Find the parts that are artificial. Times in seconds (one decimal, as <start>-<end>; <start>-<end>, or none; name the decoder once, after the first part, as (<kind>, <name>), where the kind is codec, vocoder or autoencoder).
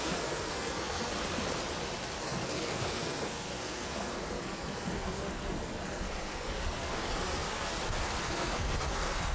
0.0-1.1 (codec, SNAC); 2.2-7.7; 8.2-9.3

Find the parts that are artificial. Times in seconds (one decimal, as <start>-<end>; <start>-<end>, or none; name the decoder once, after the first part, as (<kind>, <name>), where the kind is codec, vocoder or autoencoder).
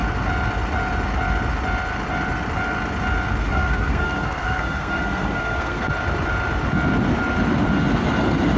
3.4-5.9 (codec, SNAC)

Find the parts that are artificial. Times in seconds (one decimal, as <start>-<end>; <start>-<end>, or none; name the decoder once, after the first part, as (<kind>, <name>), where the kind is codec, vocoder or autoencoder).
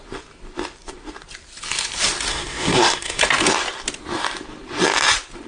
2.3-3.2 (codec, SNAC)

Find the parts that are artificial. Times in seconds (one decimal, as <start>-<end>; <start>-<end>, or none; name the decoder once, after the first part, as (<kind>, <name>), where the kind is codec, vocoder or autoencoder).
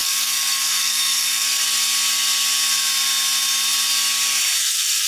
0.0-1.6 (codec, SNAC); 4.6-5.1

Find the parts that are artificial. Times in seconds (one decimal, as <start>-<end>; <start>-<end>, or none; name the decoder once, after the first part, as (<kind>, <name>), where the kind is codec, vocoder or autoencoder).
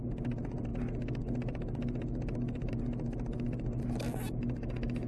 none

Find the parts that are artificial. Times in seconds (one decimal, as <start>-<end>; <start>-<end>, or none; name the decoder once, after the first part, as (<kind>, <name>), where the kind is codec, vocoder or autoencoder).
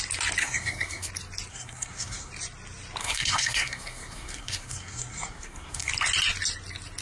0.4-1.1 (codec, SNAC); 1.5-2.3; 3.0-5.9